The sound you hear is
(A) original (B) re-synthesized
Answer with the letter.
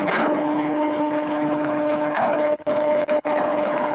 B